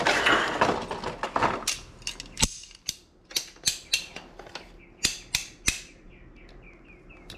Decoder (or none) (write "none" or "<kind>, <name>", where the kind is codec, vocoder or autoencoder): none